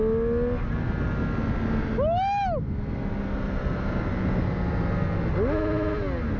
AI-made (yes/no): no